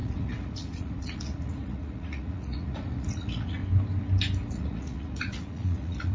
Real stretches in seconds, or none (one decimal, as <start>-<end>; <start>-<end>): 3.6-4.5